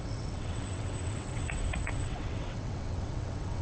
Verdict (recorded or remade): remade